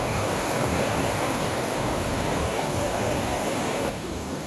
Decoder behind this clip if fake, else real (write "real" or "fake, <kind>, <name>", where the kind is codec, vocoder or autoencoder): fake, codec, DAC